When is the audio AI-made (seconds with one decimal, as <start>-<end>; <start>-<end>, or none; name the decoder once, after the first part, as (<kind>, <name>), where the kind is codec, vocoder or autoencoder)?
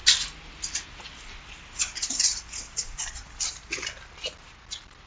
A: none